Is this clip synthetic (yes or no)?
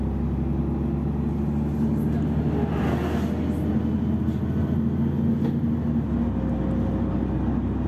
no